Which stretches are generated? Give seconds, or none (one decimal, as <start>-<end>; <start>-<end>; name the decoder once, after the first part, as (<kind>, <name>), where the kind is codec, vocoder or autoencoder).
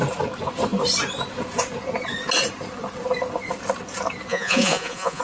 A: 4.3-5.2 (vocoder, Vocos)